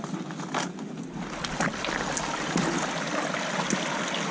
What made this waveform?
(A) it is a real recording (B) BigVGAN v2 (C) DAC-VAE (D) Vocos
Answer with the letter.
A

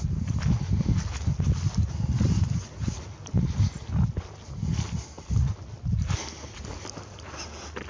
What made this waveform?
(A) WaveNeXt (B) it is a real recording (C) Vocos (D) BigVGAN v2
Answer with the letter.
B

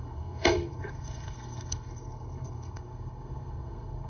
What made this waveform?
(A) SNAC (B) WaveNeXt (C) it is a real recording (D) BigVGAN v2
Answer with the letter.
A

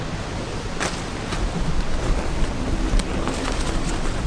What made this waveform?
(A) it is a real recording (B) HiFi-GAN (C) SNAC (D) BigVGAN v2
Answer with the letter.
A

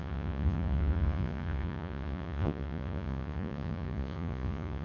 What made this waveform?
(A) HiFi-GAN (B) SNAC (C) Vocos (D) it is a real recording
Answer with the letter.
C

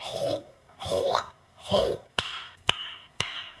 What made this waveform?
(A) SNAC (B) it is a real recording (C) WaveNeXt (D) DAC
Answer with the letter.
A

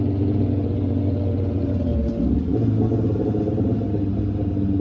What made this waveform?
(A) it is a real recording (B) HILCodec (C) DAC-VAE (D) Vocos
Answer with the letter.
A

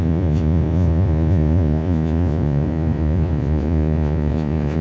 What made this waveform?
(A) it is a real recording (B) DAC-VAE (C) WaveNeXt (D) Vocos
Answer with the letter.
D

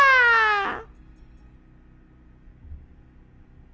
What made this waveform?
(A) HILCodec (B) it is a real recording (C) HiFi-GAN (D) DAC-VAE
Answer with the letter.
B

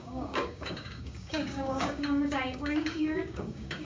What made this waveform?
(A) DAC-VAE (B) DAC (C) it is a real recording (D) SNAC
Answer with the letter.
B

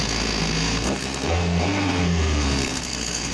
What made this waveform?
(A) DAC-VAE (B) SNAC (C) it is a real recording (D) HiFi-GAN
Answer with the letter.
B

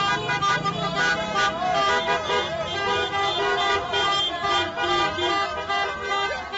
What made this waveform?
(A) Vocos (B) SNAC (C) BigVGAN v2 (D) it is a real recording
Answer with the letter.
D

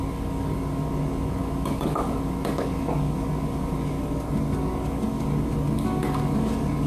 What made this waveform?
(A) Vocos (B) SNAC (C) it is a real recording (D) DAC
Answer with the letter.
D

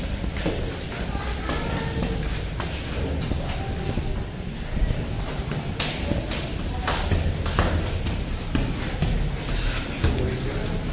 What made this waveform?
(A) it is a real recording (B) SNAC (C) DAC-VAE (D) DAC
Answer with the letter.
A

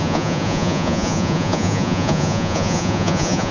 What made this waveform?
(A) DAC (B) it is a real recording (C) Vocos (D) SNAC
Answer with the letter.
C